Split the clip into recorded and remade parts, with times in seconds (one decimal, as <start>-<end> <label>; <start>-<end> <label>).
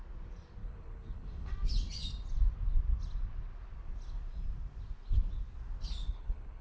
0.0-0.6 recorded; 0.6-1.5 remade; 1.5-6.0 recorded; 6.0-6.6 remade